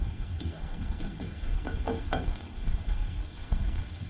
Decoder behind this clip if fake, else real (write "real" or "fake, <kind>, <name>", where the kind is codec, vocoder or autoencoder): fake, codec, SNAC